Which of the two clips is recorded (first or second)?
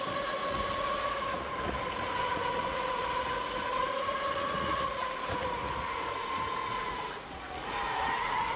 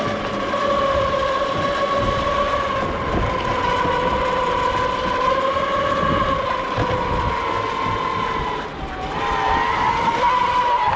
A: second